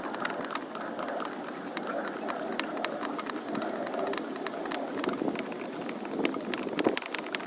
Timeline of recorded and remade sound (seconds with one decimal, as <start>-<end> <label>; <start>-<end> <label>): 0.0-7.5 recorded